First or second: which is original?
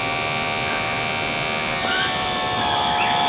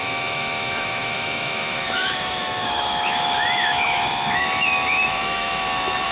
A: first